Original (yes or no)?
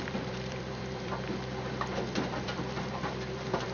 no